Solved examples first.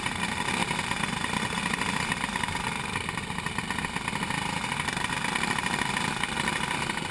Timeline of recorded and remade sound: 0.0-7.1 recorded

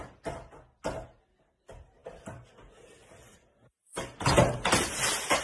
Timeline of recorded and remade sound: 0.0-5.4 recorded

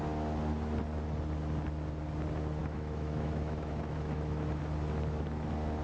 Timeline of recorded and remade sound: 0.0-2.6 recorded; 2.6-4.6 remade; 4.6-5.8 recorded

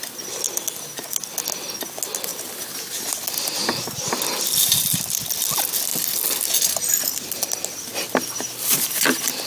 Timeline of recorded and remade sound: 0.0-9.5 recorded

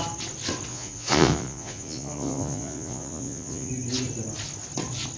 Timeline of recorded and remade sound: 0.0-0.7 recorded; 0.7-3.7 remade; 3.7-5.2 recorded

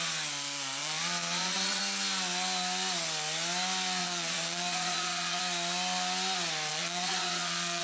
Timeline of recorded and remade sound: 0.0-0.8 recorded; 0.8-1.8 remade; 1.8-4.0 recorded; 4.0-5.4 remade; 5.4-6.7 recorded; 6.7-7.8 remade

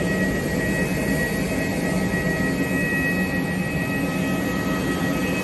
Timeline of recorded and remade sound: 0.0-5.4 recorded